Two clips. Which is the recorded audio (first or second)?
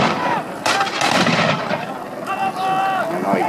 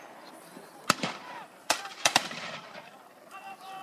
first